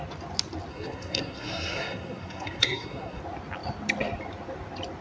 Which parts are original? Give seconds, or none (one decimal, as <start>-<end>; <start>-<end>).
0.0-0.7; 3.2-5.0